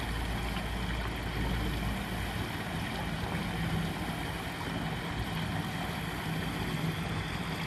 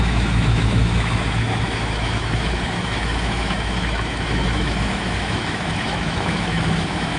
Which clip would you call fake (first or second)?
second